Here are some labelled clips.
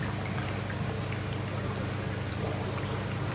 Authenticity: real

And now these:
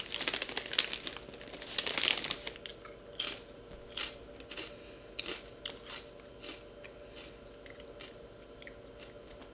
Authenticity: real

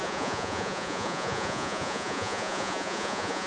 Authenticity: fake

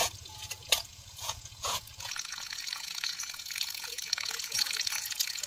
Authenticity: fake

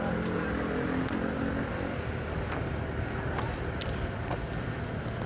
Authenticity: real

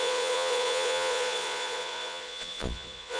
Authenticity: fake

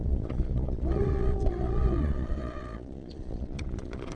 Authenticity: fake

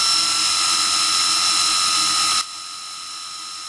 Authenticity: real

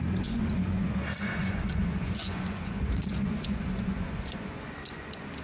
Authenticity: fake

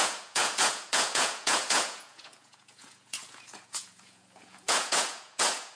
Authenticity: fake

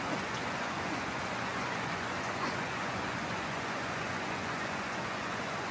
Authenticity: fake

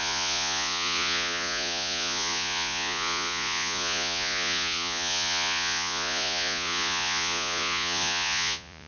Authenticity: fake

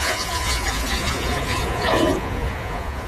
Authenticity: fake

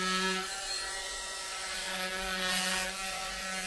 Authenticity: fake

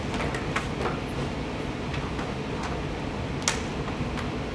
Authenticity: real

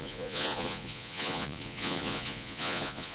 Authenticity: fake